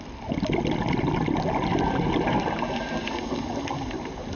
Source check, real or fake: real